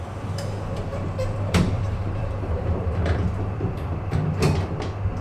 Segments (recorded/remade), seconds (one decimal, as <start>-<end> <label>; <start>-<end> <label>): 0.0-0.9 recorded; 0.9-4.0 remade; 4.0-5.2 recorded